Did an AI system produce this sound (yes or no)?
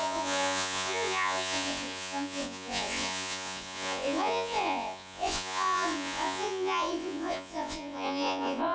yes